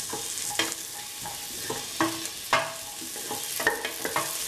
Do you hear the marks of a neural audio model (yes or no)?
no